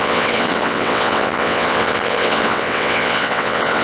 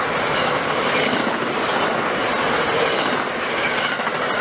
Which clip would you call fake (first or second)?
first